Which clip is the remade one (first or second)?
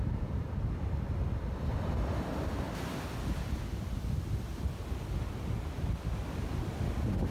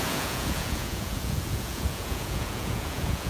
second